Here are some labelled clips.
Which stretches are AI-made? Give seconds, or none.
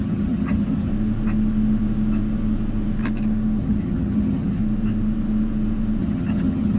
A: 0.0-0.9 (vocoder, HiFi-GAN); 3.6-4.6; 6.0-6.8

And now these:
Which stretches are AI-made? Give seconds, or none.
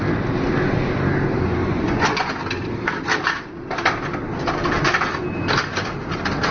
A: 1.6-2.3 (vocoder, Vocos)